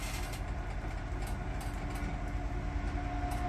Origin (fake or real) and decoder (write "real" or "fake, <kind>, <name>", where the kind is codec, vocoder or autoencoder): real